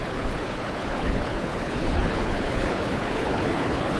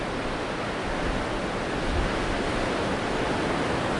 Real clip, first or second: second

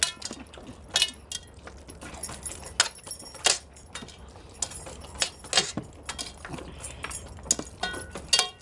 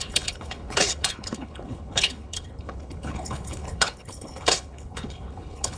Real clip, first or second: first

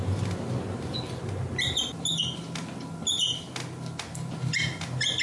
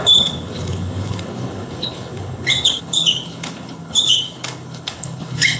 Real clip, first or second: first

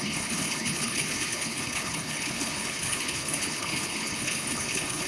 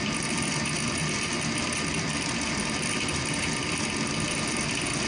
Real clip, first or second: second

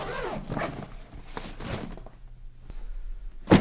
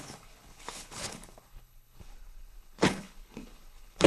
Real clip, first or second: first